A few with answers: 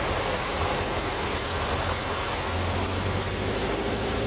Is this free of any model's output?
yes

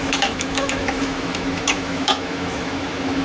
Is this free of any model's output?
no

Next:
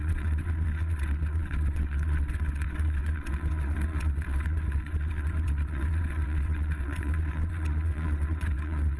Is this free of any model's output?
no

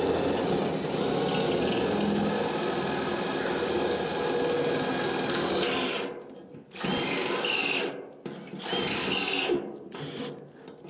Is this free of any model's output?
yes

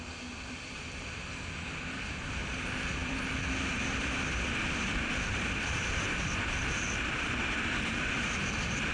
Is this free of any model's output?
no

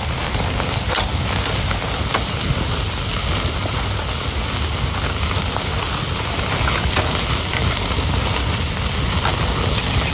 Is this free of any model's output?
yes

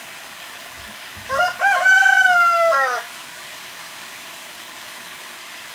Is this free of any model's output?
no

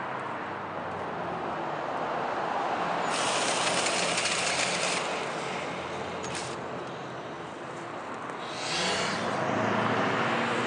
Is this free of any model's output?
yes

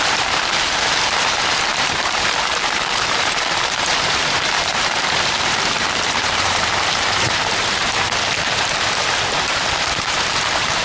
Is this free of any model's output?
no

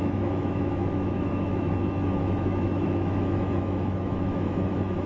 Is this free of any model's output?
no